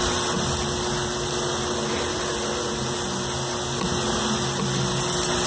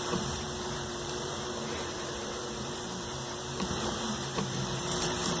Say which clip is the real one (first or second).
first